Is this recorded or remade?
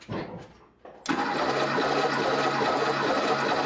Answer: recorded